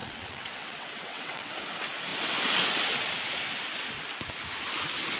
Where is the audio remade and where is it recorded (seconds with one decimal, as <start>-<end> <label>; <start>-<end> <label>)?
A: 0.0-1.5 remade; 1.5-5.2 recorded